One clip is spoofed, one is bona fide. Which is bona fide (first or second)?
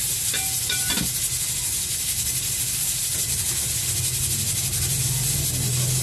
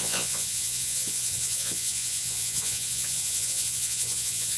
first